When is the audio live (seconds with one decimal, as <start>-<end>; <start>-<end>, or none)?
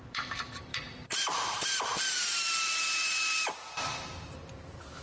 none